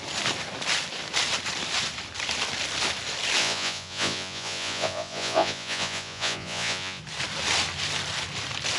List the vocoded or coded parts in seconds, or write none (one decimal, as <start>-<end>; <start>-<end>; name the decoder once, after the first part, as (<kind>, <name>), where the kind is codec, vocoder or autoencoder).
3.4-7.0 (vocoder, Vocos)

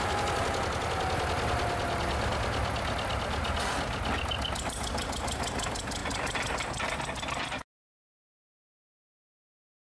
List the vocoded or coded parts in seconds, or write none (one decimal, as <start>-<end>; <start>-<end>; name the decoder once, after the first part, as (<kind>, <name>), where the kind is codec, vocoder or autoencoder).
none

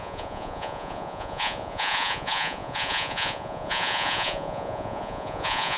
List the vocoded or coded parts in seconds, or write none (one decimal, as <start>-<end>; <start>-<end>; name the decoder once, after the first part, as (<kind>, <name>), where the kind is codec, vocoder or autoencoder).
0.0-5.8 (vocoder, Vocos)